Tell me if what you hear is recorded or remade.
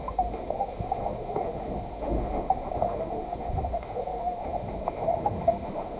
remade